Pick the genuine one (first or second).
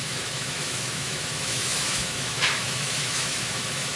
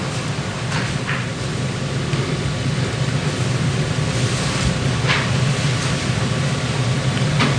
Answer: second